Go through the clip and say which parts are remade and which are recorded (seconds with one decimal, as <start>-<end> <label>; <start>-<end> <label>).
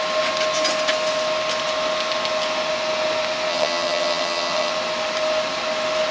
0.0-3.5 recorded; 3.5-4.7 remade; 4.7-6.1 recorded